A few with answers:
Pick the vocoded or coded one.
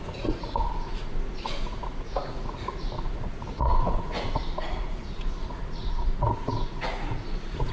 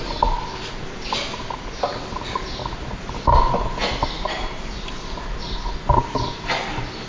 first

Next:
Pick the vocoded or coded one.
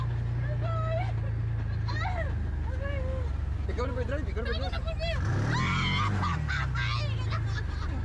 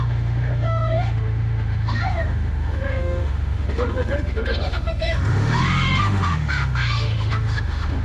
second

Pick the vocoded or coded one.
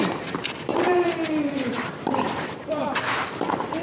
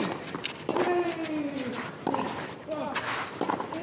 first